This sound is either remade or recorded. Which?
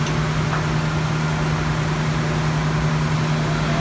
recorded